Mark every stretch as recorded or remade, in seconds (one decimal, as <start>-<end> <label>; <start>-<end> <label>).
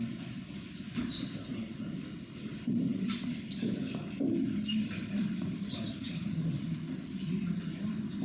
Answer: 0.0-2.9 recorded; 2.9-6.1 remade; 6.1-8.2 recorded